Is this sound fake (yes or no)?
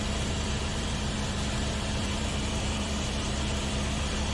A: yes